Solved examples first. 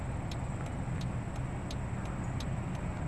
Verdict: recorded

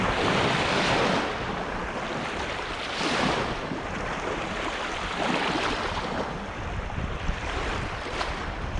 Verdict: recorded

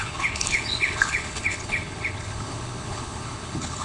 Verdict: remade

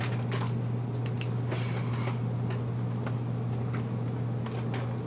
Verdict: recorded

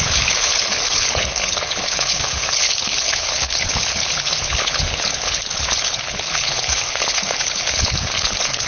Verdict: remade